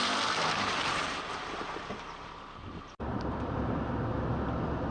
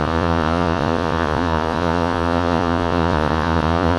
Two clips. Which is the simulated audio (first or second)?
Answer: second